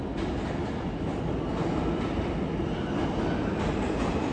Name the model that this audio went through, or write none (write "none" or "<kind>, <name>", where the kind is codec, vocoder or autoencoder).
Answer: none